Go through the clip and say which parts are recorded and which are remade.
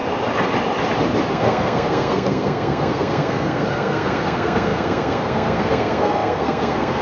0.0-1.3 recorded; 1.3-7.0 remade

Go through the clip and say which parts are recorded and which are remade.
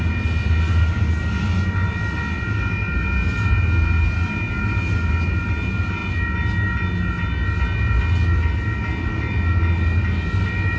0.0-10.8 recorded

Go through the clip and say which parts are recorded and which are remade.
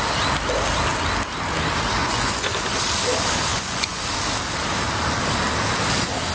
0.0-2.0 recorded; 2.0-2.5 remade; 2.5-3.5 recorded; 3.5-4.0 remade; 4.0-6.3 recorded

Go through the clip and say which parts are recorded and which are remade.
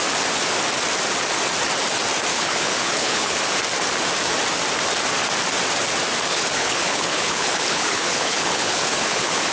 0.0-2.3 recorded; 2.3-3.4 remade; 3.4-6.3 recorded; 6.3-9.5 remade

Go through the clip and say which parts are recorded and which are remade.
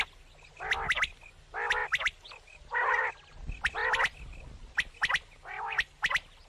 0.0-6.5 recorded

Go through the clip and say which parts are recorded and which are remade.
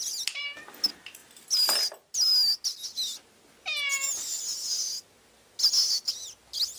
0.0-6.8 recorded